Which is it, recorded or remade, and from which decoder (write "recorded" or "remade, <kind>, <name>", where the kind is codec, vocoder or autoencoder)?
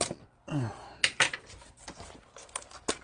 recorded